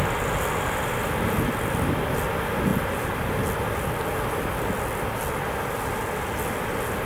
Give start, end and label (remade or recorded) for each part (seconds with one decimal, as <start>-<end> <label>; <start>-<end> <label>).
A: 0.0-7.1 recorded